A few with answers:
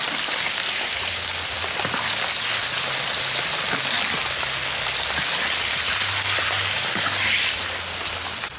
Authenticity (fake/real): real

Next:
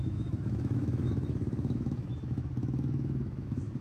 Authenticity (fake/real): fake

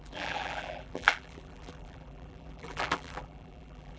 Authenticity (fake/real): fake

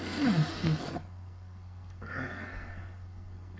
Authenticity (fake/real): fake